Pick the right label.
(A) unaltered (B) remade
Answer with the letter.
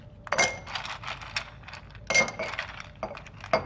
A